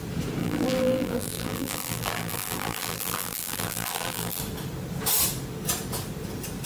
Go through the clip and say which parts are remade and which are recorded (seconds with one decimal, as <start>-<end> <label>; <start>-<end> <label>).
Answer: 0.0-0.4 recorded; 0.4-4.4 remade; 4.4-6.7 recorded